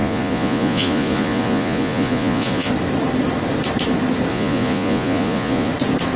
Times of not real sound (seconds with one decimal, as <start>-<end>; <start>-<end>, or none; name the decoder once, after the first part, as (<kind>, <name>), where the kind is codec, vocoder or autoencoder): 0.0-2.7 (vocoder, Vocos); 4.3-5.7